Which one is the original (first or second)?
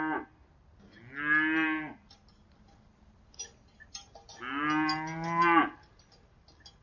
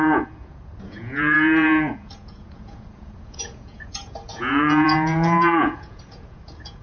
first